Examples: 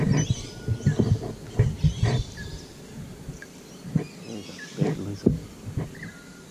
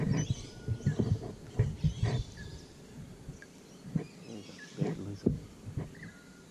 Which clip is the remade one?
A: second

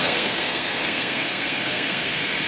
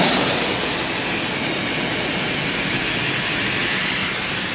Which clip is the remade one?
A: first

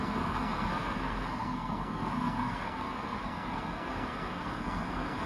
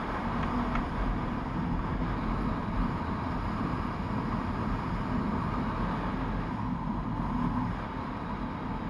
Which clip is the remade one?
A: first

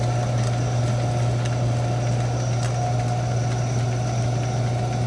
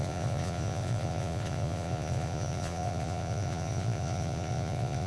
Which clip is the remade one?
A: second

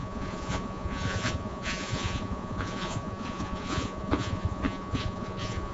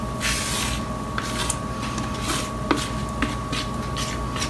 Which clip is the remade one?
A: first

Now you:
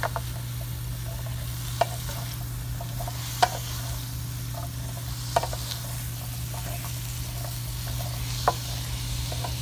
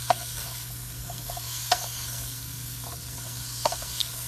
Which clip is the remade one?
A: second